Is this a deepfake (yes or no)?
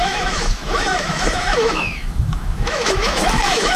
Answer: yes